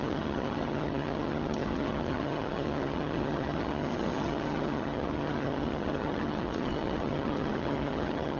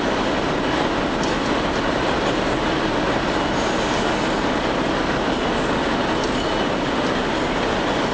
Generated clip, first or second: first